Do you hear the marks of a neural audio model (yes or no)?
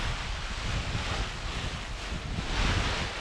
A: no